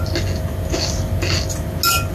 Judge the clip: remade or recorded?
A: recorded